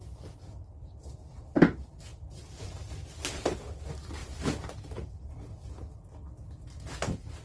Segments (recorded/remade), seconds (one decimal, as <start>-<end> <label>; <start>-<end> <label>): 0.0-4.2 recorded; 4.2-5.1 remade; 5.1-7.4 recorded